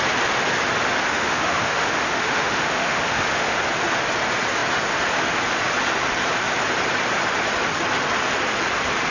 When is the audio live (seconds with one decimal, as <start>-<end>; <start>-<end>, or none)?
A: 0.0-1.1; 3.6-9.1